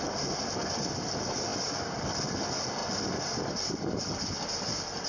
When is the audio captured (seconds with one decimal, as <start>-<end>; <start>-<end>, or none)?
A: 0.0-5.1